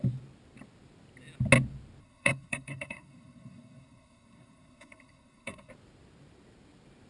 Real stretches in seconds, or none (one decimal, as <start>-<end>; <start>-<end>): 0.0-2.0; 5.7-7.1